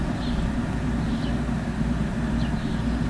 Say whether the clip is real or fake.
real